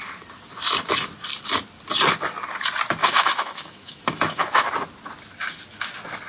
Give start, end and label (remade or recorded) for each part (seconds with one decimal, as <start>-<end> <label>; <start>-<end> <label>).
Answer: 0.0-3.0 recorded; 3.0-4.7 remade; 4.7-6.3 recorded